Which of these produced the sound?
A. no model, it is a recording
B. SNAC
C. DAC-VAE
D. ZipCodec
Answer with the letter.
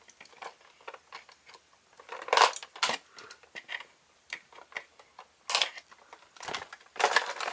A